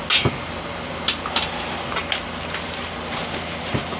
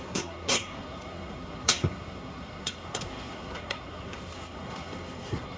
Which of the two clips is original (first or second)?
first